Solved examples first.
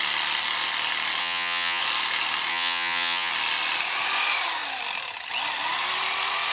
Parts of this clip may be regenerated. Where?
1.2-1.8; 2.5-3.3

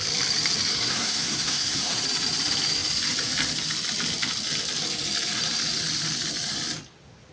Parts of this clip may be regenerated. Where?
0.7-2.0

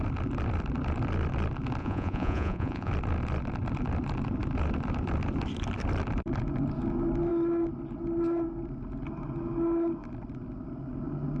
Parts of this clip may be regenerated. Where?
1.8-2.9

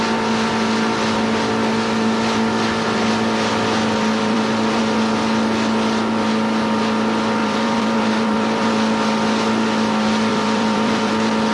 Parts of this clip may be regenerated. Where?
4.2-4.8; 7.4-8.7; 10.3-11.1